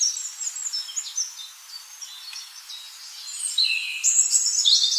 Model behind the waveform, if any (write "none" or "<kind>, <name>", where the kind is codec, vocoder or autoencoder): none